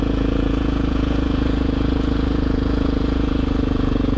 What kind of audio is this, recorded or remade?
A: remade